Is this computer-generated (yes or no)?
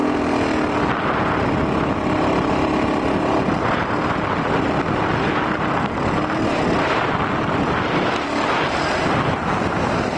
no